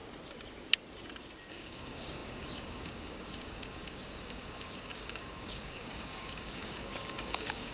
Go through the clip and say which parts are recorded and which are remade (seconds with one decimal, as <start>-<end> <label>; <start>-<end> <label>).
0.0-1.5 recorded; 1.5-7.7 remade

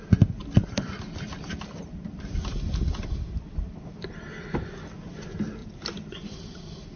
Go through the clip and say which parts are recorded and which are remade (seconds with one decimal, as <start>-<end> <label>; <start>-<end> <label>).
0.0-0.4 recorded; 0.4-3.7 remade; 3.7-5.6 recorded; 5.6-7.0 remade

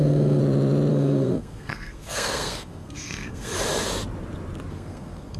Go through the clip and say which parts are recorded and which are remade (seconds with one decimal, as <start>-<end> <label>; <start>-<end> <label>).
0.0-0.4 remade; 0.4-0.9 recorded; 0.9-3.5 remade; 3.5-4.7 recorded; 4.7-5.4 remade

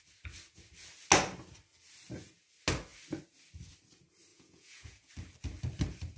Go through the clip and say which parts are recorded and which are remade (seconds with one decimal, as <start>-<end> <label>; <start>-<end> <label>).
0.0-4.3 recorded; 4.3-5.1 remade; 5.1-6.2 recorded

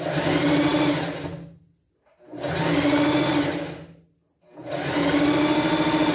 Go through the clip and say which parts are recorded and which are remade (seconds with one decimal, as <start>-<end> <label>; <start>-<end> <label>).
0.0-6.1 recorded